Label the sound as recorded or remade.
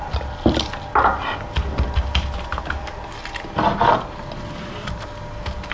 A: recorded